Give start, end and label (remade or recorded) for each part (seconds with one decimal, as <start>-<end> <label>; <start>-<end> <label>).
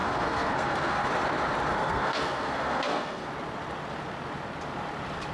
0.0-1.1 remade; 1.1-1.7 recorded; 1.7-3.3 remade; 3.3-5.3 recorded